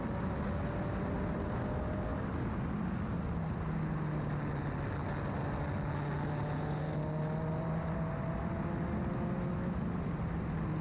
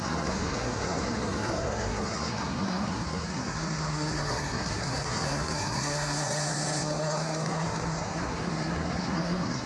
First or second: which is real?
first